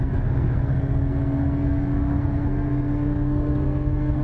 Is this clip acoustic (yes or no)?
no